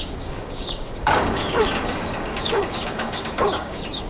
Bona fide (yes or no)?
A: no